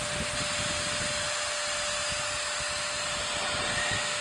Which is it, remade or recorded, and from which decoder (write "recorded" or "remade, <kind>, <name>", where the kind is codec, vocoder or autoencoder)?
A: recorded